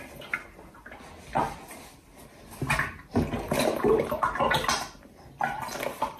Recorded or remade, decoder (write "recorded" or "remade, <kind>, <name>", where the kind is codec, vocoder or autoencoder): recorded